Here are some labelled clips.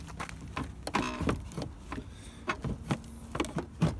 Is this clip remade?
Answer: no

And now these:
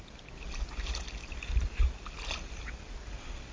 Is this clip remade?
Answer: no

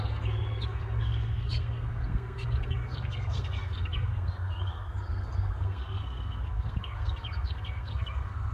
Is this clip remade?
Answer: yes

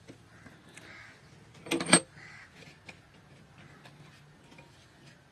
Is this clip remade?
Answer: no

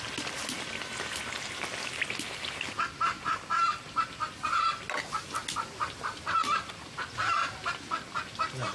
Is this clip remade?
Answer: no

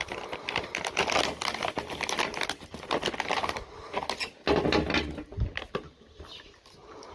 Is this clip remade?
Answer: no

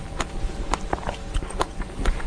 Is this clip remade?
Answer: no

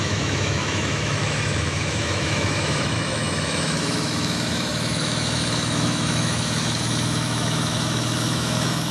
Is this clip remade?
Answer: yes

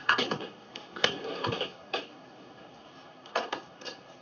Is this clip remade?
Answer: yes